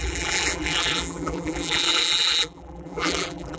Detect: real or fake fake